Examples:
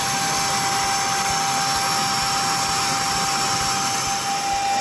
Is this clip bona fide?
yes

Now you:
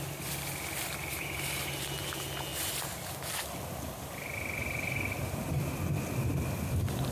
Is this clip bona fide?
yes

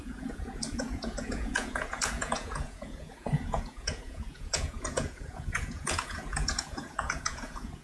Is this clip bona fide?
no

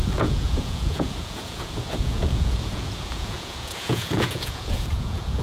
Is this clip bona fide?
no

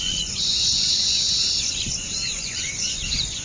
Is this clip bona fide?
no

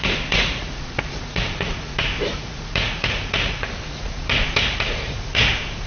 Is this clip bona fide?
no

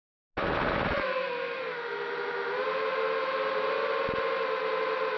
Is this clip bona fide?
yes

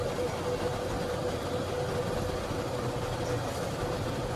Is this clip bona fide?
yes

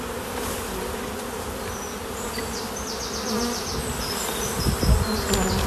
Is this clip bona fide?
yes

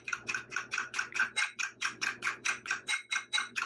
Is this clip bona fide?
no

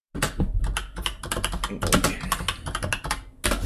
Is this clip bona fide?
yes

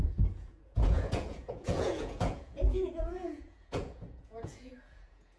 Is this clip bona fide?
no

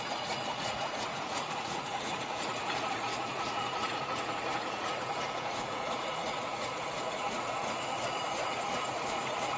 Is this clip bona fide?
no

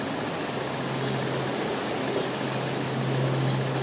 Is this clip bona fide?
yes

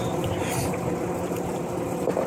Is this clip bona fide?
yes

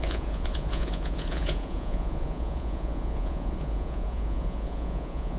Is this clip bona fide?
no